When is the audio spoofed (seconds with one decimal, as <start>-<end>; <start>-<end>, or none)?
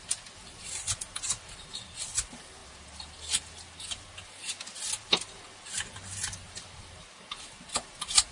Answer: none